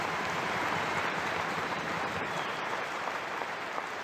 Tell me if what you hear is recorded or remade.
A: remade